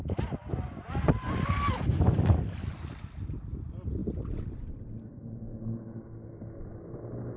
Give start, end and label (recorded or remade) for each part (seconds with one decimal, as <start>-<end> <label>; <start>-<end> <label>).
0.0-4.0 recorded; 4.0-5.2 remade; 5.2-7.4 recorded